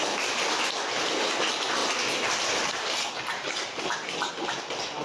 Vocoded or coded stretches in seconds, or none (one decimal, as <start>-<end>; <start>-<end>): none